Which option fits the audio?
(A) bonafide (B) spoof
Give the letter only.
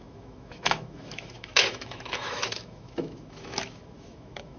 B